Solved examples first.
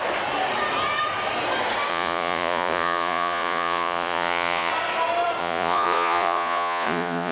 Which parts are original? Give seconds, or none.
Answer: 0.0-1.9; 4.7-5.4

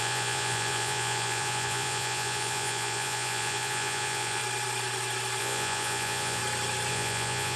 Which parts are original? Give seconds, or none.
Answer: 4.4-5.4; 6.4-6.9

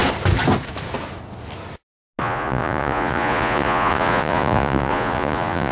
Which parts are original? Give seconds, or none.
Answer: 0.0-2.2

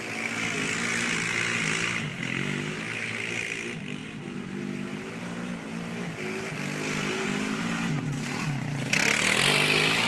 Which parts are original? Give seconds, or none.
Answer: 0.0-10.1

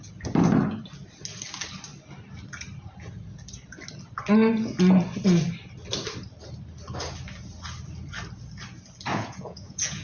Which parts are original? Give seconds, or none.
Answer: 0.0-9.1

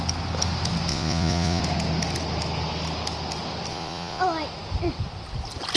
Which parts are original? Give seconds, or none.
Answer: 0.0-0.9; 1.6-3.7; 4.2-5.8